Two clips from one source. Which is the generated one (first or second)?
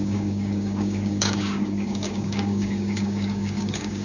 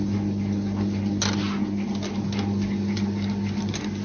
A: first